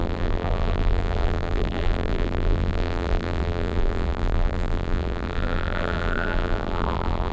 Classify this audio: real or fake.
fake